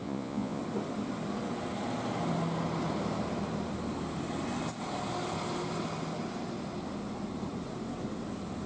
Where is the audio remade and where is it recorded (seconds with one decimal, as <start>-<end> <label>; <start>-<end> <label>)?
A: 0.0-0.6 remade; 0.6-8.7 recorded

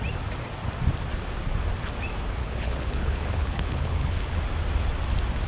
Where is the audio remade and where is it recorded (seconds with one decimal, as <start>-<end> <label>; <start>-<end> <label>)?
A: 0.0-2.4 recorded; 2.4-4.4 remade; 4.4-5.5 recorded

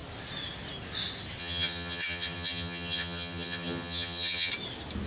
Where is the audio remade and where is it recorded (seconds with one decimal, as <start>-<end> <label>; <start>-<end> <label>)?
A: 0.0-1.4 recorded; 1.4-4.5 remade; 4.5-5.1 recorded

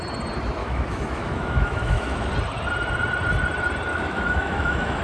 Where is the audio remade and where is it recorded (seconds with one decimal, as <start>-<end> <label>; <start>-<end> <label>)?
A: 0.0-0.6 recorded; 0.6-2.3 remade; 2.3-3.9 recorded; 3.9-5.0 remade

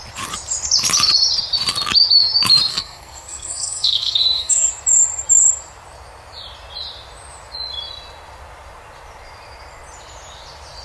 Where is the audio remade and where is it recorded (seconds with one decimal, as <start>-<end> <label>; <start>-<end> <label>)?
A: 0.0-2.7 recorded; 2.7-4.7 remade; 4.7-10.8 recorded